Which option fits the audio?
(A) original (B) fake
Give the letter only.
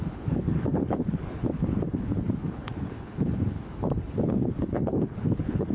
B